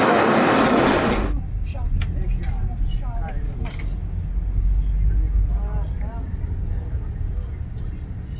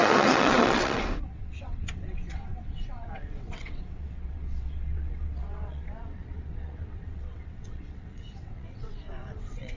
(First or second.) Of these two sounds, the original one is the first